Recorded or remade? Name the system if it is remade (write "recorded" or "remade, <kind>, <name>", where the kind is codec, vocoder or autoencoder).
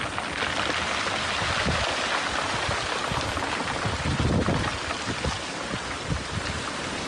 recorded